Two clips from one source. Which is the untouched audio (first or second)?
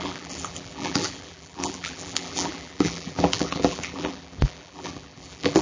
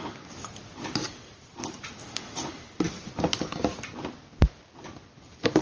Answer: second